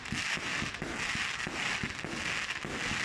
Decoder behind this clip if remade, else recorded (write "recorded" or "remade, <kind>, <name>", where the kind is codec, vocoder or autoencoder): recorded